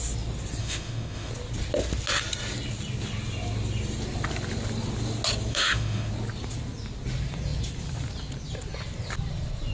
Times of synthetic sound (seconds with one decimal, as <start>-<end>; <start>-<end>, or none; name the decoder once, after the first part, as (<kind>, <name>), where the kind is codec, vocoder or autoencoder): 0.6-1.3 (autoencoder, DAC-VAE); 5.5-6.1